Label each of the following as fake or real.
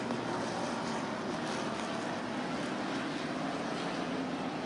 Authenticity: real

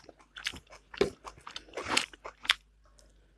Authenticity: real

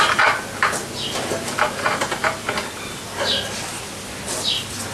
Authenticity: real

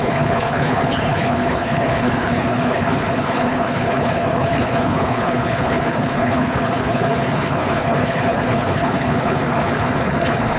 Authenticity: fake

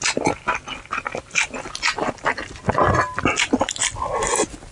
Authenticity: real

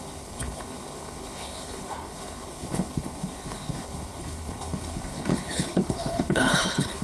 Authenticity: fake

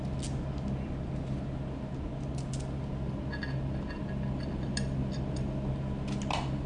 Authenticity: real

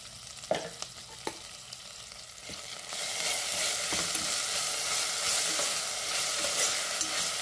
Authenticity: real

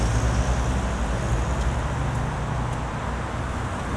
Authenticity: real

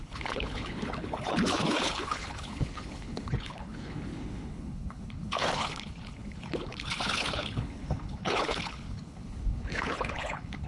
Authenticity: fake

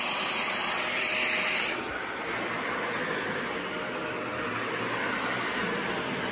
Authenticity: real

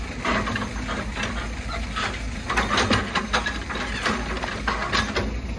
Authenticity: real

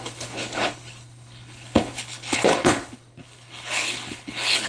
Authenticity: fake